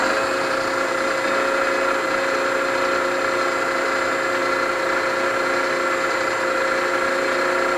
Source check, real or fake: real